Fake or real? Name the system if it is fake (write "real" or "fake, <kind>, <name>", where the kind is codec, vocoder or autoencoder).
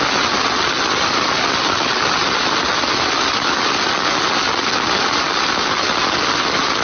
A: real